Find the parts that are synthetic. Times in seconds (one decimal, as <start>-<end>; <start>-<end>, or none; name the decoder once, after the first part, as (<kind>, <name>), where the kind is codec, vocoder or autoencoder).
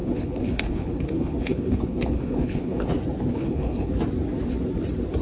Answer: 0.0-2.9 (codec, HILCodec); 3.3-3.9